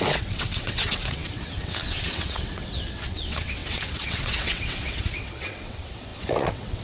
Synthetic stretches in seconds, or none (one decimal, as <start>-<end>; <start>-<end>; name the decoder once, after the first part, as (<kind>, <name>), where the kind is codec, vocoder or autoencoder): 0.0-6.8 (vocoder, WaveNeXt)